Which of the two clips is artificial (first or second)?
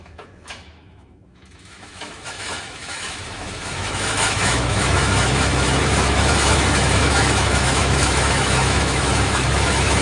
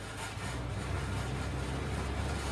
first